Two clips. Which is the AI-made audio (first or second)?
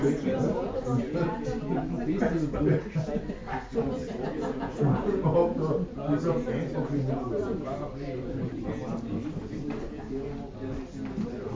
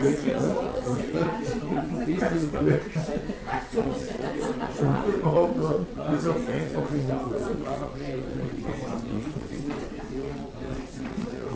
second